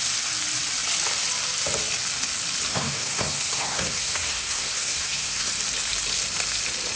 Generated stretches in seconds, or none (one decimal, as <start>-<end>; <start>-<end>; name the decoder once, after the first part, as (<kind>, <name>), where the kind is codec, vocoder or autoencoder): 2.7-5.5 (codec, SNAC)